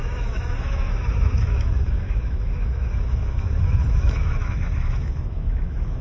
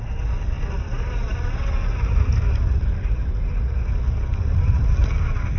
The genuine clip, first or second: second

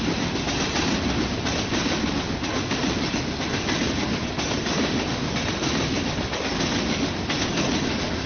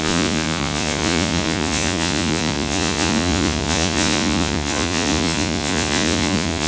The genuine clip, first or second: first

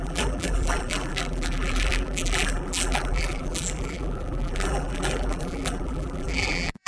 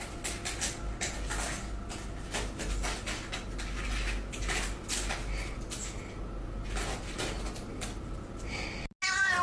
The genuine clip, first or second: second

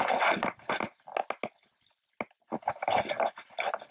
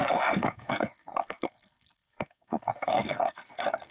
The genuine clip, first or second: first